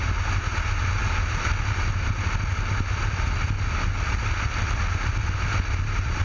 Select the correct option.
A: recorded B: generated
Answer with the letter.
A